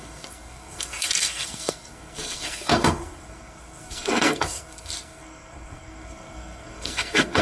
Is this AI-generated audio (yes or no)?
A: yes